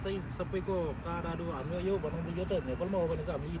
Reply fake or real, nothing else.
fake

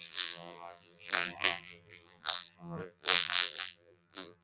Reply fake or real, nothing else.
fake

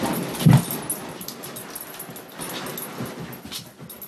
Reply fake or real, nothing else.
real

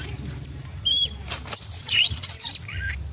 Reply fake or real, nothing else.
real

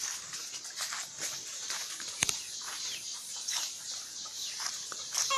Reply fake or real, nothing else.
fake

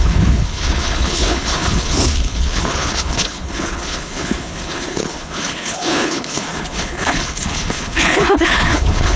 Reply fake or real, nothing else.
fake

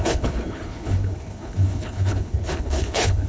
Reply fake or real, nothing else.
fake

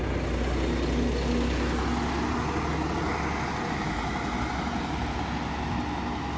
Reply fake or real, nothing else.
real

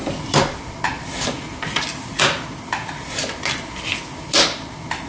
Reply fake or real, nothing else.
real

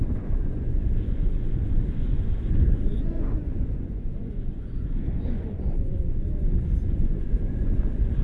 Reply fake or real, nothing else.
fake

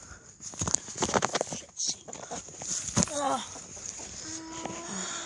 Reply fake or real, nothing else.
real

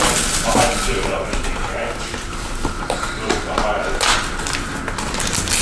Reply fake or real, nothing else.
real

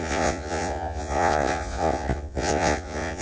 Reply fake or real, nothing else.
fake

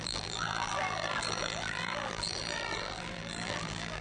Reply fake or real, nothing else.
fake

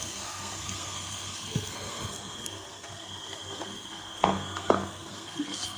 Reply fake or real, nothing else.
fake